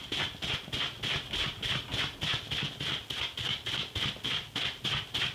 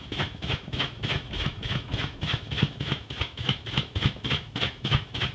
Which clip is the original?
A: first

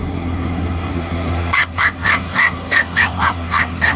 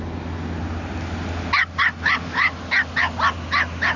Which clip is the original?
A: second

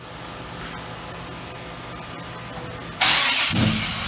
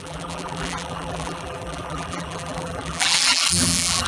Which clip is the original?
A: first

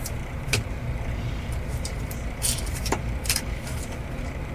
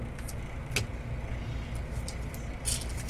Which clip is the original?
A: second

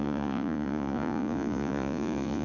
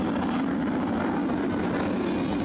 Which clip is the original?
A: second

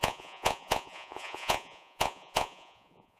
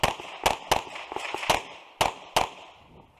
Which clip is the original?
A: second